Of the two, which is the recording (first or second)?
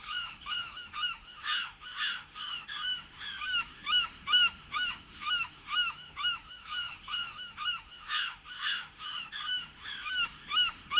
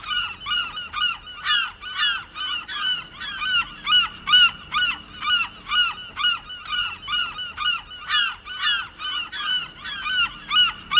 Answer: second